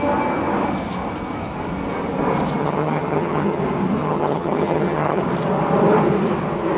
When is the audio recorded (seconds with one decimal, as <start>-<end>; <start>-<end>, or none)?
0.0-2.6; 3.6-4.0; 5.2-6.8